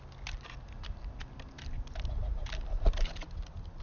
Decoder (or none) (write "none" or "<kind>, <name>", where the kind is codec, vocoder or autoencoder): none